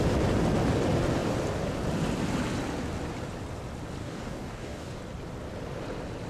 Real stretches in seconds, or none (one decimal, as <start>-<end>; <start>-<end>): 0.0-4.0; 5.0-6.3